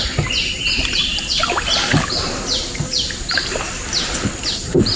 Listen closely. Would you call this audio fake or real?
real